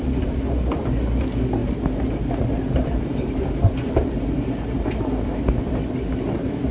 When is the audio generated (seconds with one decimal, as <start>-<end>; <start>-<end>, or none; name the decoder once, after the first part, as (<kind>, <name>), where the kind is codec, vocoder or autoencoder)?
1.6-5.4 (vocoder, BigVGAN v2)